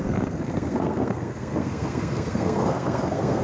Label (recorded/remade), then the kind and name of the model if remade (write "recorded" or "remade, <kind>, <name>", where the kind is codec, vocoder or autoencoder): remade, codec, SNAC